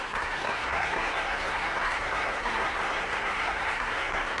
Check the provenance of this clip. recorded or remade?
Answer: remade